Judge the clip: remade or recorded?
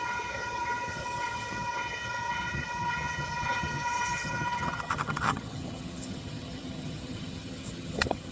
remade